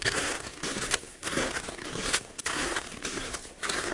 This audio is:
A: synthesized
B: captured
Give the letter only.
A